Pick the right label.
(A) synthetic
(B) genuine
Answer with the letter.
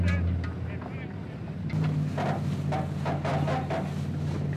B